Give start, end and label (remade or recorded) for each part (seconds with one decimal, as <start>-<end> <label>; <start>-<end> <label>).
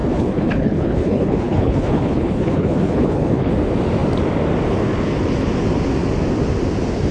0.0-3.5 remade; 3.5-7.1 recorded